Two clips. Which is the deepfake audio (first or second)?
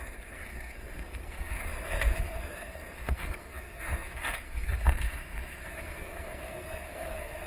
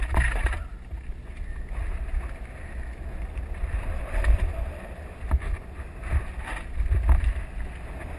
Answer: first